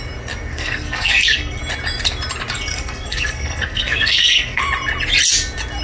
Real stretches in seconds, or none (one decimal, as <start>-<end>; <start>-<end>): 0.0-0.5; 1.6-2.7; 4.6-5.8